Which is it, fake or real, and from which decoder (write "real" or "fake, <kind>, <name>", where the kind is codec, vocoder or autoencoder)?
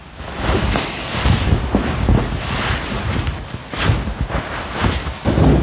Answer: real